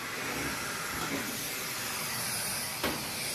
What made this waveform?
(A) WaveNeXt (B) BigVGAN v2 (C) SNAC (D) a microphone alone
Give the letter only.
D